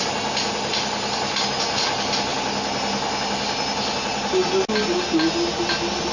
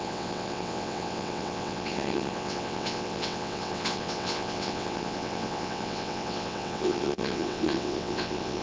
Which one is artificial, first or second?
second